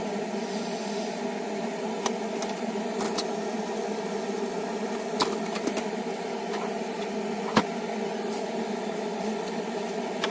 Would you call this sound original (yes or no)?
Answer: yes